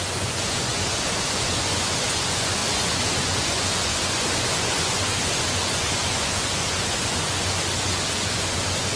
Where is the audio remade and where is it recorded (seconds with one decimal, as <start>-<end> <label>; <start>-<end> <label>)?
0.0-9.0 remade